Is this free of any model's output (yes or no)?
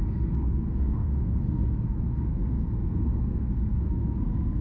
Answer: no